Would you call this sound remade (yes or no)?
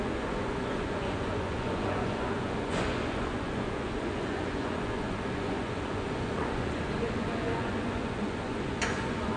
yes